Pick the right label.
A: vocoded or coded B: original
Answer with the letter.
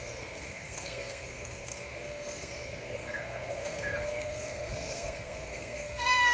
A